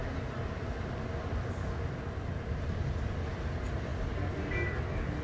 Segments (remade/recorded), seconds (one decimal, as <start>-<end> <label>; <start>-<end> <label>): 0.0-5.2 recorded